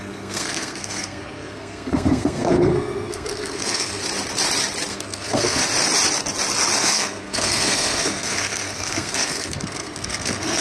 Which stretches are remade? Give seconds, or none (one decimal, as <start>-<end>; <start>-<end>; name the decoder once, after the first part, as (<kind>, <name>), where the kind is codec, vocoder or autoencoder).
0.0-4.0 (codec, SNAC); 4.9-5.6; 6.8-10.6